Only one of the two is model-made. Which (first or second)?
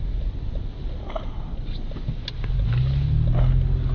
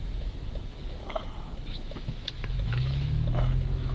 second